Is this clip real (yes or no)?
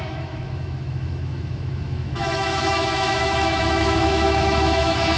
no